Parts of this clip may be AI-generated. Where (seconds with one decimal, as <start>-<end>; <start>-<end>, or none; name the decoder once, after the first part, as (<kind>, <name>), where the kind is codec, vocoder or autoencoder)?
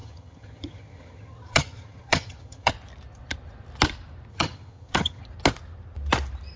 0.0-2.7 (vocoder, HiFi-GAN); 4.3-5.2